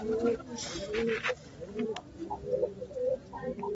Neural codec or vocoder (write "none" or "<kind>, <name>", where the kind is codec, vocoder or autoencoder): none